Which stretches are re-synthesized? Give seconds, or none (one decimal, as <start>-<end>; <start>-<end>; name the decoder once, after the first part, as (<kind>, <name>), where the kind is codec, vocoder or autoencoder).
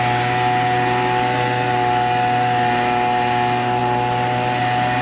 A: none